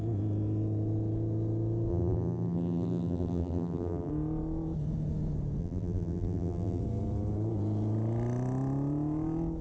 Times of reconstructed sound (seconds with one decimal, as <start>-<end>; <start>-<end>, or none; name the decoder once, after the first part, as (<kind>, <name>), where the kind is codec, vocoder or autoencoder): 1.9-4.1 (vocoder, BigVGAN v2); 5.6-6.8